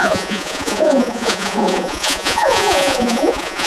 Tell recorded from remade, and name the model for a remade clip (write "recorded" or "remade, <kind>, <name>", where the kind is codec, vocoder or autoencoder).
remade, vocoder, Vocos